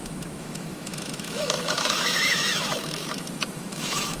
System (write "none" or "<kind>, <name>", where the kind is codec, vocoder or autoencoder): autoencoder, DAC-VAE